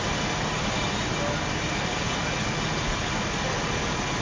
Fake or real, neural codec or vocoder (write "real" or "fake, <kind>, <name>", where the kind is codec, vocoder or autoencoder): real